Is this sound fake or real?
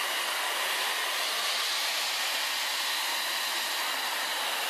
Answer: real